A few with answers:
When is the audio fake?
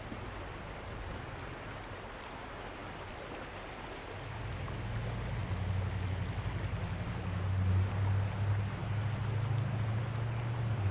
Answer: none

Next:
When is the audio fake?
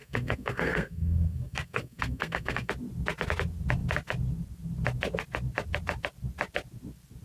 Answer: 0.0-2.7 (codec, SNAC)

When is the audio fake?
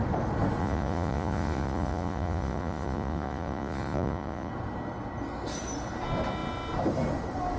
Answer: 0.6-4.5 (vocoder, Vocos)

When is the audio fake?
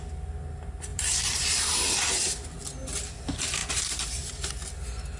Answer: 0.9-1.4 (vocoder, BigVGAN v2); 3.6-4.5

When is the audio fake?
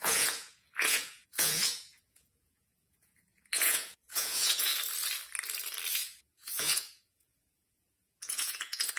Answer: 0.0-4.7 (vocoder, Vocos); 5.9-9.0